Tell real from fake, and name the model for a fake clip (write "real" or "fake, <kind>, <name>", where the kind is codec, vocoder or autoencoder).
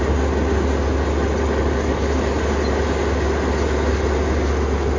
real